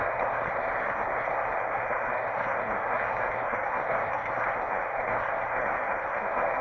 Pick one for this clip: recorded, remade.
remade